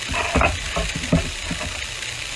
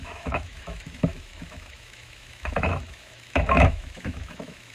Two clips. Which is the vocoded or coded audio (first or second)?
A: second